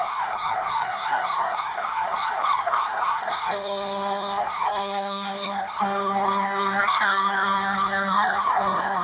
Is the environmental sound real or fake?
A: fake